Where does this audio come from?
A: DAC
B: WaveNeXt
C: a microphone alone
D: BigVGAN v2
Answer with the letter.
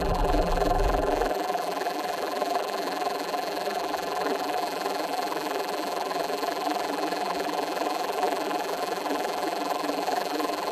D